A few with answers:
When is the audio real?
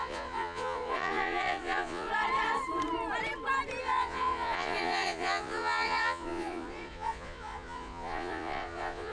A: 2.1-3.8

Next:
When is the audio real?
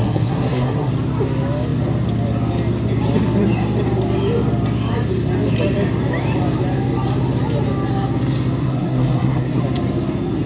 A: 0.9-8.6; 9.6-10.5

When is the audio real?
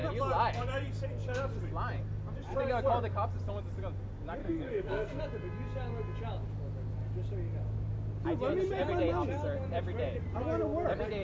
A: 0.0-4.4; 5.2-11.2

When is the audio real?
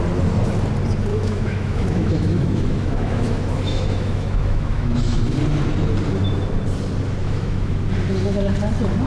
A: 0.0-1.1; 5.2-7.2; 7.8-9.1